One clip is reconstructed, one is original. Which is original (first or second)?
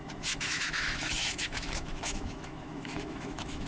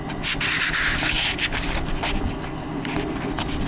second